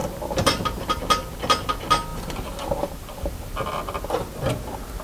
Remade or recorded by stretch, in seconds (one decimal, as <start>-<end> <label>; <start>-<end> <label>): 0.0-1.0 remade; 1.0-5.0 recorded